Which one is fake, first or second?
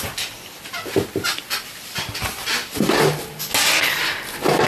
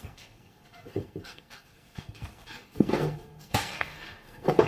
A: second